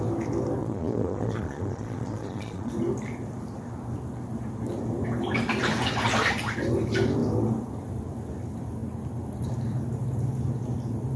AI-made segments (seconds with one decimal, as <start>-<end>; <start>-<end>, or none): 0.6-2.7

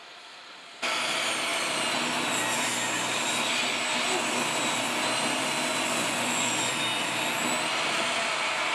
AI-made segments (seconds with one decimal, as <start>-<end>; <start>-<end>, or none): 5.7-6.7